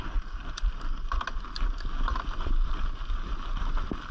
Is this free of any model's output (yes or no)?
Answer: yes